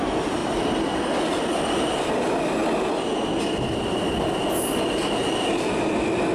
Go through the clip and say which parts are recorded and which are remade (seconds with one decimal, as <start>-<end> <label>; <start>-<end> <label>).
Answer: 0.0-2.6 remade; 2.6-4.6 recorded; 4.6-6.3 remade